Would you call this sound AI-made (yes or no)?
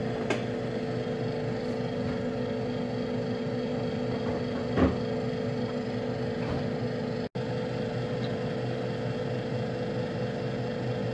no